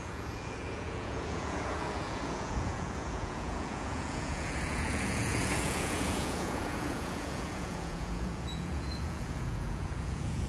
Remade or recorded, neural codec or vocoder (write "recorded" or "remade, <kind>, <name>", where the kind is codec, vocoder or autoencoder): remade, vocoder, Vocos